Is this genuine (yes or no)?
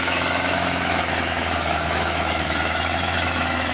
no